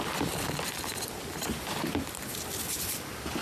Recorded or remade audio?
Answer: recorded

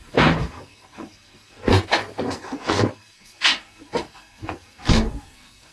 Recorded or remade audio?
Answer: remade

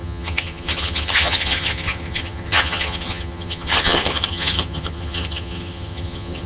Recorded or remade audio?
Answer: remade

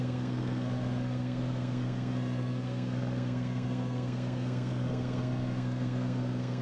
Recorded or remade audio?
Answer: remade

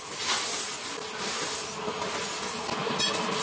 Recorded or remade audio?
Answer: recorded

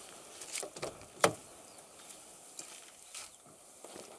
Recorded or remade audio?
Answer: recorded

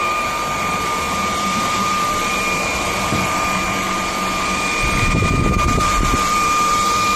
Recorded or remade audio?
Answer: remade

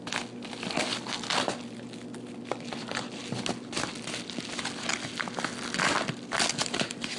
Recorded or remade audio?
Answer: recorded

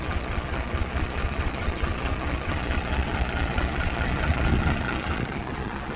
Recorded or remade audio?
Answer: remade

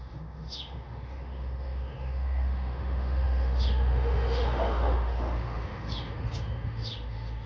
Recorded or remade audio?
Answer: remade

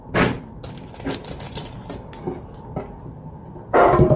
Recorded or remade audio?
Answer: recorded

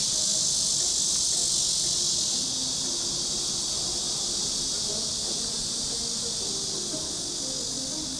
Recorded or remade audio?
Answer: recorded